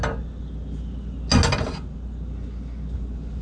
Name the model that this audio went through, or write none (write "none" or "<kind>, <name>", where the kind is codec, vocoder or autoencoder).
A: none